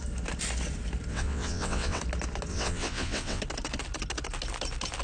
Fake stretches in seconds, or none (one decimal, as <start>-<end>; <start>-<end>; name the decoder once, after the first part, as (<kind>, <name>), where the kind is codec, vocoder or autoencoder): 1.1-2.0 (vocoder, WaveNeXt); 2.5-3.4